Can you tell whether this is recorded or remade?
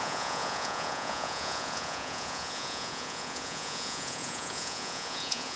remade